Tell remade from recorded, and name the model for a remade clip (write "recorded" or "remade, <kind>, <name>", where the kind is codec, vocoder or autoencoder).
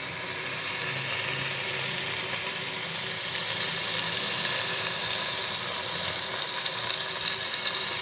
recorded